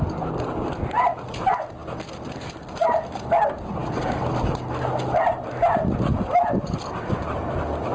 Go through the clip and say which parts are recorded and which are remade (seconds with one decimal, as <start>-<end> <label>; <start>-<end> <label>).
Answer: 0.0-7.9 recorded